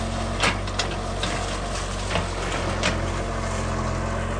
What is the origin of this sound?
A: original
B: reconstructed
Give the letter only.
A